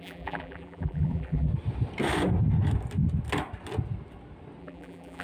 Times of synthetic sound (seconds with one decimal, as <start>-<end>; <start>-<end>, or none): 0.0-1.5; 4.6-5.2